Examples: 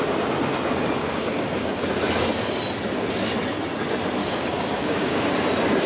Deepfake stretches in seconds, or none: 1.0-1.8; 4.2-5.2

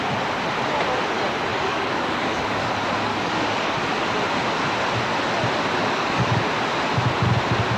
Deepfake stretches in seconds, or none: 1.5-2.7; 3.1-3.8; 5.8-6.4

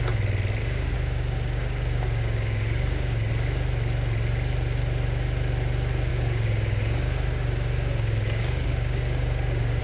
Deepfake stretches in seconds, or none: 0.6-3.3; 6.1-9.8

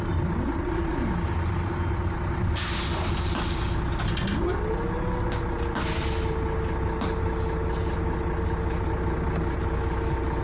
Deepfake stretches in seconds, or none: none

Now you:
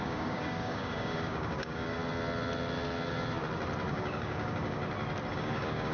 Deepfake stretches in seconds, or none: 0.0-2.0; 3.9-4.8; 5.3-5.9

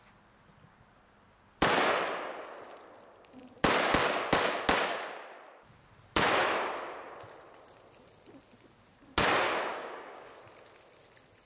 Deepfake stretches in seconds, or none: 9.7-10.4